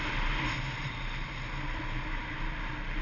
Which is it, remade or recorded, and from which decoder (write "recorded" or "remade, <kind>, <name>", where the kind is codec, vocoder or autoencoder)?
recorded